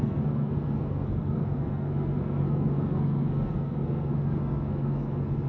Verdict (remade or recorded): remade